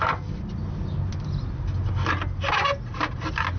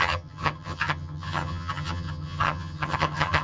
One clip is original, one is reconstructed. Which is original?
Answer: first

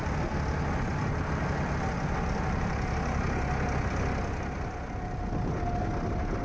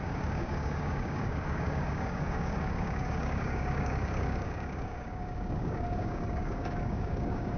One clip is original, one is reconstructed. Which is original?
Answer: first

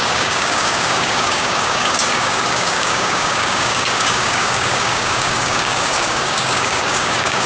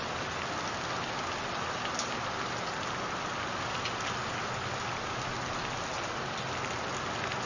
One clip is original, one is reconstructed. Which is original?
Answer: second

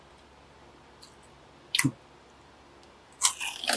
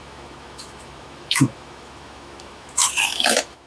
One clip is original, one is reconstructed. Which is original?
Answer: first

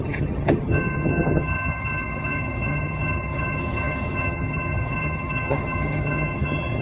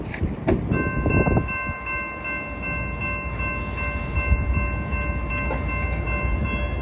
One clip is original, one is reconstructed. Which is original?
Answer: second